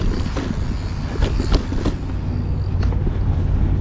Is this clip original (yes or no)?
yes